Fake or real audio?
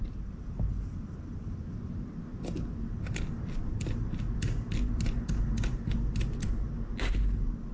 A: real